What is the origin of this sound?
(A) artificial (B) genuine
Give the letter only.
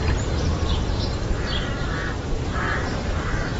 B